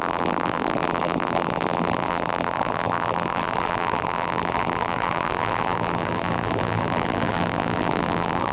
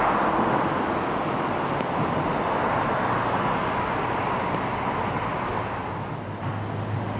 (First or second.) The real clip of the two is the second